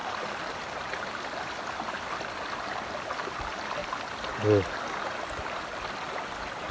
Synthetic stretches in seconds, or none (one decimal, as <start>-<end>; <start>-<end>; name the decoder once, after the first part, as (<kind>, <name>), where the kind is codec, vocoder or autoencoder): none